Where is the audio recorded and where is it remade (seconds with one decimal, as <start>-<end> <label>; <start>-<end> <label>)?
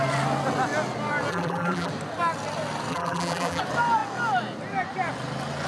0.0-1.3 recorded; 1.3-1.9 remade; 1.9-2.9 recorded; 2.9-3.6 remade; 3.6-5.7 recorded